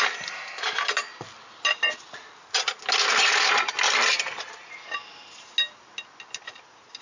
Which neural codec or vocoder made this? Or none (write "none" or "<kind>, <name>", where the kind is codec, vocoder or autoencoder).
none